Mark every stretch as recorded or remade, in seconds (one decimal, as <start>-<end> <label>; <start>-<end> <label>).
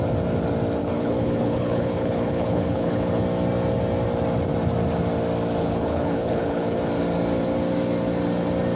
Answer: 0.0-0.8 recorded; 0.8-3.2 remade; 3.2-5.6 recorded; 5.6-6.8 remade; 6.8-8.8 recorded